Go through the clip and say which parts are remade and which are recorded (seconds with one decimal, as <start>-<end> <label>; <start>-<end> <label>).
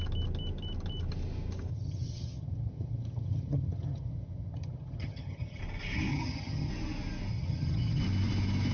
0.0-1.7 recorded; 1.7-5.6 remade; 5.6-6.1 recorded; 6.1-6.7 remade; 6.7-7.3 recorded; 7.3-8.0 remade; 8.0-8.7 recorded